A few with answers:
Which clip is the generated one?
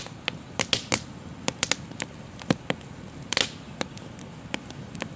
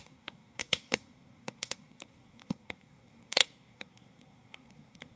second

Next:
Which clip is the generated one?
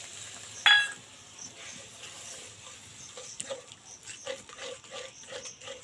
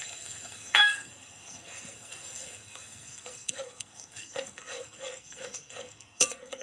second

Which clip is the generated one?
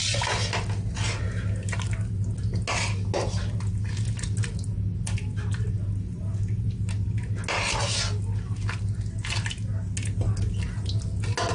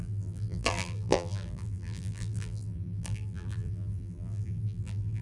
second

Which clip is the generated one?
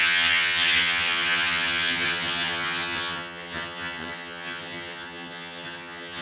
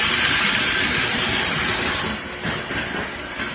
first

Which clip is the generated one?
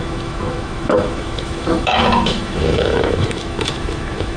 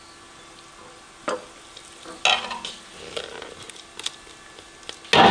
first